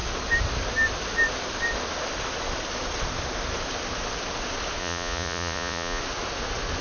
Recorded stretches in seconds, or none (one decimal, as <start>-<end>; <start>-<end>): 0.0-4.8; 6.0-6.8